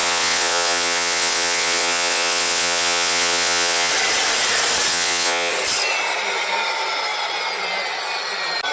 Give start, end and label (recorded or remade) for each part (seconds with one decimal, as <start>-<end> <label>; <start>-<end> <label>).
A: 0.0-3.9 remade; 3.9-4.9 recorded; 4.9-5.5 remade; 5.5-8.7 recorded